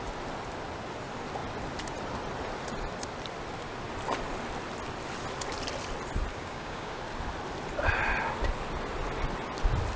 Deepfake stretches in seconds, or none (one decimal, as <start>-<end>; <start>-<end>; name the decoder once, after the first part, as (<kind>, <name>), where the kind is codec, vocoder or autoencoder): 6.3-7.0 (codec, DAC)